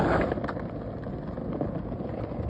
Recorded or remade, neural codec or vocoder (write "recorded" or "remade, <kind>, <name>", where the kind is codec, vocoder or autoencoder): recorded